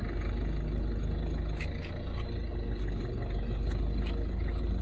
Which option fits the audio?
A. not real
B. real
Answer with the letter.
B